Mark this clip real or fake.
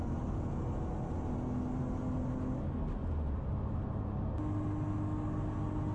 real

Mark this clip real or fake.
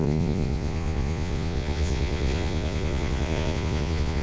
fake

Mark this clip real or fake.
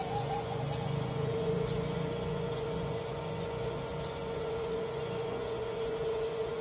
fake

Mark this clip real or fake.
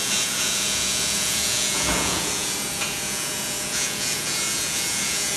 fake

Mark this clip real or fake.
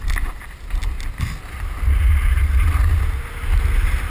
real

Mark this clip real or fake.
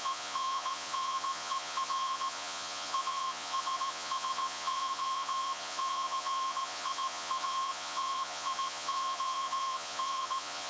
fake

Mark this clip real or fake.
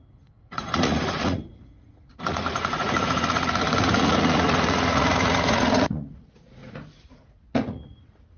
fake